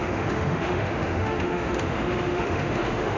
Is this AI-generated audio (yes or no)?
yes